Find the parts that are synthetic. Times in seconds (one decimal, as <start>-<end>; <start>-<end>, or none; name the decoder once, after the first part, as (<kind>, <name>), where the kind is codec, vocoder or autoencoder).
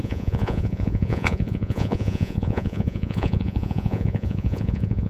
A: 0.0-5.1 (vocoder, Vocos)